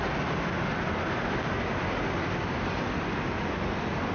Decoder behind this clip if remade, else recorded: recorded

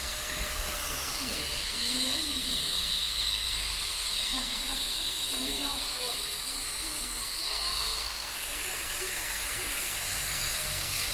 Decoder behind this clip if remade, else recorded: remade, codec, SNAC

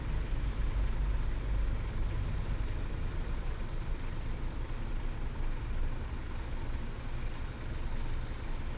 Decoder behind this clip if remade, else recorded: recorded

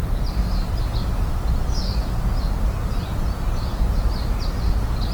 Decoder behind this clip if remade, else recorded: recorded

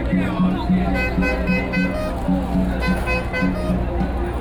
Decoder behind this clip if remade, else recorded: recorded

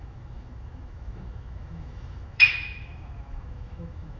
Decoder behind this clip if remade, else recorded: remade, autoencoder, DAC-VAE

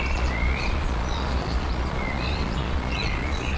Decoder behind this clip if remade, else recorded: remade, vocoder, Vocos